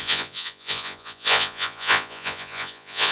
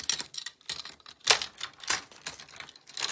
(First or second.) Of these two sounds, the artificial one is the first